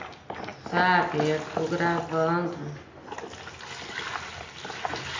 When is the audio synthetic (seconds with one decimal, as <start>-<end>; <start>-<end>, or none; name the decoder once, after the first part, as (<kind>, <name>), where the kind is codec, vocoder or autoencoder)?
none